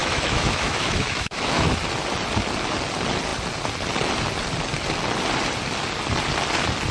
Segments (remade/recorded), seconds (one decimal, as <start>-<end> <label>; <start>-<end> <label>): 0.0-1.7 remade; 1.7-6.9 recorded